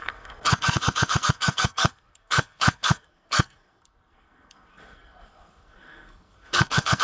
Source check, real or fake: fake